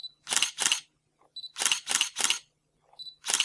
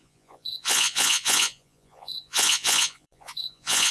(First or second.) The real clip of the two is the first